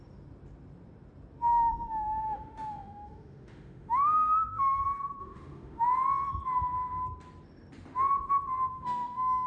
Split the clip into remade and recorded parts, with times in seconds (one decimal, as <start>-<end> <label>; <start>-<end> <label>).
0.0-1.5 recorded; 1.5-4.8 remade; 4.8-5.2 recorded; 5.2-5.8 remade; 5.8-8.7 recorded; 8.7-9.5 remade